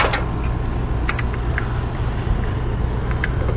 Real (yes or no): yes